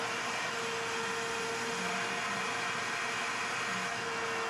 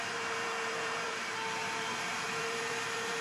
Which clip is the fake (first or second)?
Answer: second